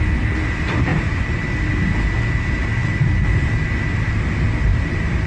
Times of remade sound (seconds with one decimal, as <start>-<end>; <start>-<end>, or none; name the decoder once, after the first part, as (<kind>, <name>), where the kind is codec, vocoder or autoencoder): 4.7-5.3 (vocoder, BigVGAN v2)